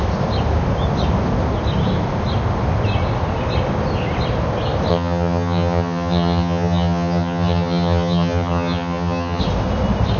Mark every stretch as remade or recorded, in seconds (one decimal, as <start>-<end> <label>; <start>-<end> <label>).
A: 0.0-4.9 recorded; 4.9-9.4 remade; 9.4-10.2 recorded